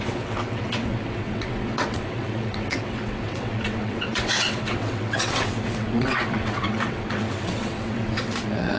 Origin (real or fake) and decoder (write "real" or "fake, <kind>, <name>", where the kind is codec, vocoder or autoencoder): fake, vocoder, WaveNeXt